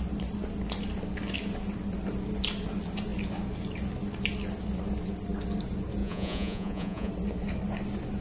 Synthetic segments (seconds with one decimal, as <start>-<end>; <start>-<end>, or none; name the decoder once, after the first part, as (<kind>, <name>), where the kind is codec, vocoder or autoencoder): 6.0-7.1 (vocoder, Vocos)